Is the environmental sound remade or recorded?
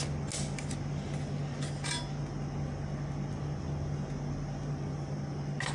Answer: recorded